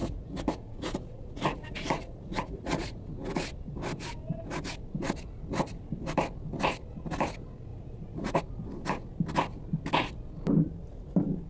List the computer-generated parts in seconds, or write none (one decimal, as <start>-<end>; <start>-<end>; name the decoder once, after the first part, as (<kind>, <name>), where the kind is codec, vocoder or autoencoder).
0.0-3.1 (vocoder, Vocos); 7.7-8.4